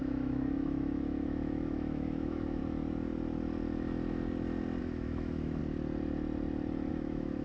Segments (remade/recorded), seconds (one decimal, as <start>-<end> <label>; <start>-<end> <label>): 0.0-2.6 remade; 2.6-4.8 recorded; 4.8-5.6 remade; 5.6-6.9 recorded; 6.9-7.4 remade